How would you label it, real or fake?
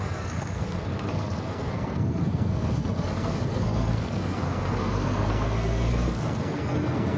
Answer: fake